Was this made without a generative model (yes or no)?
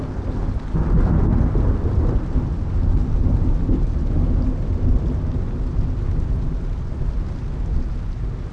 yes